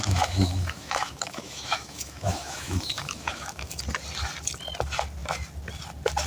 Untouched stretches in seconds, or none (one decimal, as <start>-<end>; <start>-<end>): 3.8-6.3